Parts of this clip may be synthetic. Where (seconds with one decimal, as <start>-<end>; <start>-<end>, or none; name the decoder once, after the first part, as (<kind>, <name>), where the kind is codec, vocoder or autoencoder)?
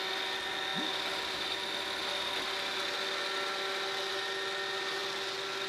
none